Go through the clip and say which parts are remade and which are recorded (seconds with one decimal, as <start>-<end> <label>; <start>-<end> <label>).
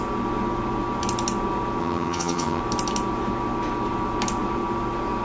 0.0-1.8 recorded; 1.8-2.6 remade; 2.6-5.2 recorded